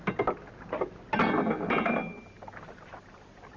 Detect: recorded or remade recorded